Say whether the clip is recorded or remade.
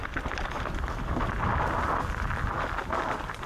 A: recorded